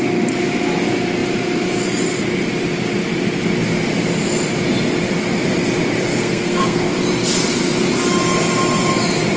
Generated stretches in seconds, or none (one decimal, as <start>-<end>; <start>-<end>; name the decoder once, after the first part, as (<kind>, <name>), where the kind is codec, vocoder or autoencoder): 6.1-6.9 (codec, SNAC)